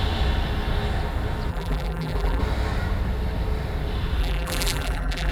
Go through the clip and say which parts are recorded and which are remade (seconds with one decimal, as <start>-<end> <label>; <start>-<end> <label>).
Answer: 0.0-1.5 recorded; 1.5-2.4 remade; 2.4-4.2 recorded; 4.2-5.3 remade

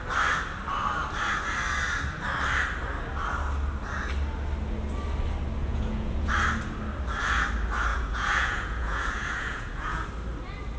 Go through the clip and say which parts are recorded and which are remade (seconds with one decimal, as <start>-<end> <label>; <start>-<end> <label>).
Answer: 0.0-5.6 recorded; 5.6-6.3 remade; 6.3-7.9 recorded; 7.9-10.1 remade; 10.1-10.8 recorded

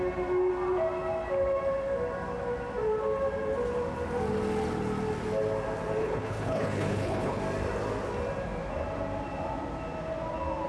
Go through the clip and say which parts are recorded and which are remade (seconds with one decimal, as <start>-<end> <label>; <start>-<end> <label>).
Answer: 0.0-6.0 recorded; 6.0-7.4 remade; 7.4-10.7 recorded

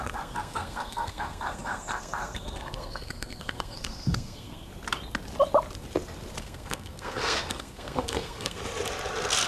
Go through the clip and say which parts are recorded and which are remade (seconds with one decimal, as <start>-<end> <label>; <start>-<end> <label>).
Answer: 0.0-4.7 remade; 4.7-6.4 recorded; 6.4-8.6 remade; 8.6-9.5 recorded

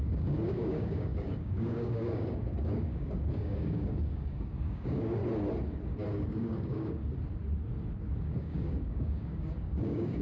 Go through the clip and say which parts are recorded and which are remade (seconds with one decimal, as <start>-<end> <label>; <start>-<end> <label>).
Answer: 0.0-5.2 remade; 5.2-6.1 recorded; 6.1-7.0 remade; 7.0-8.0 recorded; 8.0-10.2 remade